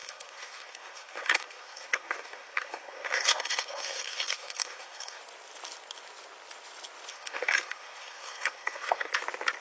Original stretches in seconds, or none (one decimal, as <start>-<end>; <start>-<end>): 5.2-7.1; 9.1-9.6